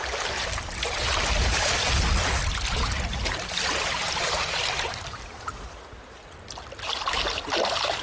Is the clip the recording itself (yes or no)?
yes